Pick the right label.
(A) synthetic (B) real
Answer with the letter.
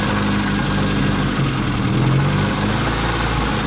B